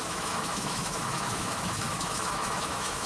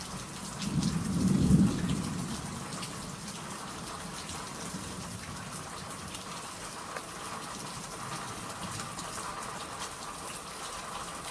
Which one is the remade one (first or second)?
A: first